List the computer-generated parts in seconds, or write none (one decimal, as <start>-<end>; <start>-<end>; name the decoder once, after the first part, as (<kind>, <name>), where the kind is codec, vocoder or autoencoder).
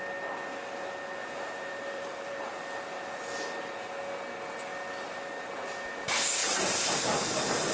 1.2-2.5 (vocoder, BigVGAN v2); 6.4-7.3